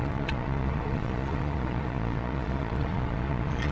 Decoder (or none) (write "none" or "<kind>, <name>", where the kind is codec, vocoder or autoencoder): vocoder, Vocos